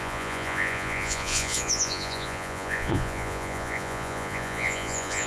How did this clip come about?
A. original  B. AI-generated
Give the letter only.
B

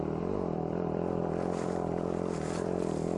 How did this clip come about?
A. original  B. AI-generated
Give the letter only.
B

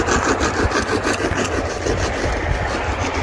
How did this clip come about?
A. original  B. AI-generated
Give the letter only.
A